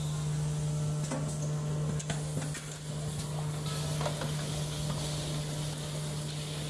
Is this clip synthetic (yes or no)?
no